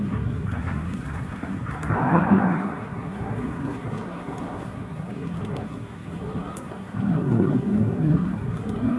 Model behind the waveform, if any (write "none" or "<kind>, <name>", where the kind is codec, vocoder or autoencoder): codec, SNAC